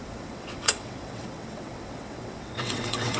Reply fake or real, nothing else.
fake